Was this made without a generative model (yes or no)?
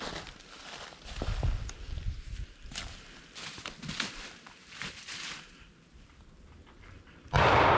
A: yes